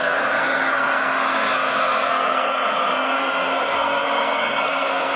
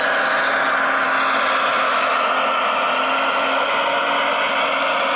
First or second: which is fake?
first